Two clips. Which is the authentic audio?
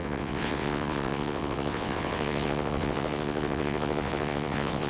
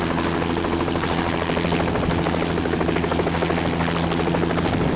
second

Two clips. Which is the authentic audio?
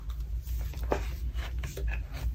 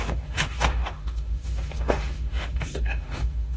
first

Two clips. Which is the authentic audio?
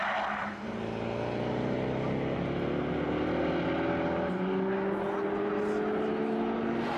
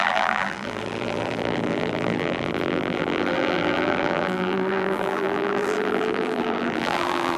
first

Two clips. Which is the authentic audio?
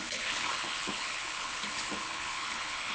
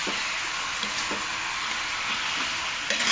second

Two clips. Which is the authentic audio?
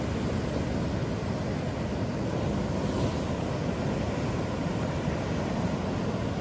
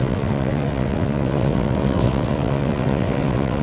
first